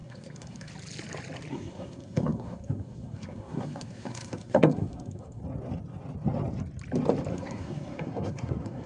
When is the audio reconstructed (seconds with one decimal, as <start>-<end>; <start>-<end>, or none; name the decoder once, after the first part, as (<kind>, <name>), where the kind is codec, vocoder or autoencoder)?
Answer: 0.0-0.7 (codec, SNAC); 1.5-5.4; 7.3-8.9